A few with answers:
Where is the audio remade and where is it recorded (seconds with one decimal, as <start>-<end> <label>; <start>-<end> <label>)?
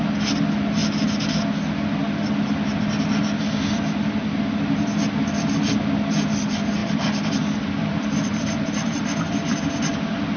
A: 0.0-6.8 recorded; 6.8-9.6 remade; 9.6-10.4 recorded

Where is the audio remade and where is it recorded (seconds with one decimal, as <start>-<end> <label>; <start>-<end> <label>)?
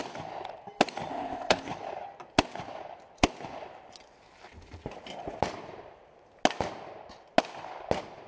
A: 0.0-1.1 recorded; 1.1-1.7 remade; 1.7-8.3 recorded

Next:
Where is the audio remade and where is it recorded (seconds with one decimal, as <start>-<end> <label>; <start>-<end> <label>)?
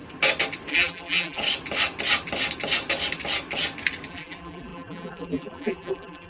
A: 0.0-0.7 recorded; 0.7-1.4 remade; 1.4-4.1 recorded; 4.1-6.3 remade